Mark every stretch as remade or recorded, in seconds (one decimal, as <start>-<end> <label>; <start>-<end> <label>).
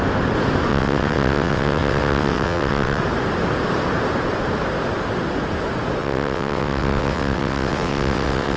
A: 0.0-0.7 recorded; 0.7-3.0 remade; 3.0-6.0 recorded; 6.0-8.6 remade